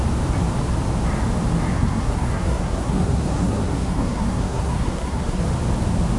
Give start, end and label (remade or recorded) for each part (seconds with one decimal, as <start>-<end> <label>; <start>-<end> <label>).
0.0-1.7 recorded; 1.7-5.4 remade; 5.4-6.2 recorded